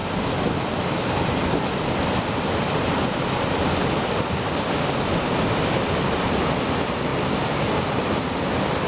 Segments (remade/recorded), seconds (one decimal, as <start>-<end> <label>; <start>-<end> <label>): 0.0-8.9 recorded